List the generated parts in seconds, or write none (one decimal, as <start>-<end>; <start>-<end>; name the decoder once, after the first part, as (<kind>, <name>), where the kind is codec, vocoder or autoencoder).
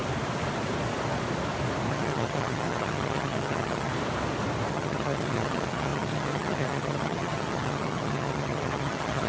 1.9-3.9 (vocoder, HiFi-GAN); 4.7-9.3